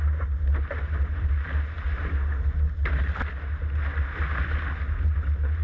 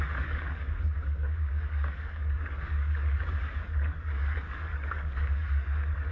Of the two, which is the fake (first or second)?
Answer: second